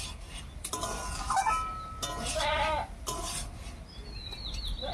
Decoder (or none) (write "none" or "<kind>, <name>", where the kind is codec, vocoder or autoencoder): none